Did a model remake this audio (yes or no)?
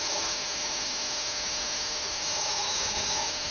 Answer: yes